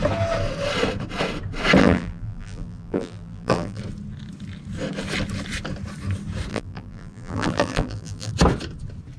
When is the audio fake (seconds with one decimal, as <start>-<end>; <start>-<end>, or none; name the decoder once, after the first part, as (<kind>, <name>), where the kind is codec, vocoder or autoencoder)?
1.8-3.8 (vocoder, BigVGAN v2); 6.5-8.3